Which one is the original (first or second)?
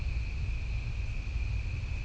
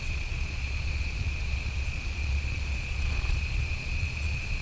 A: first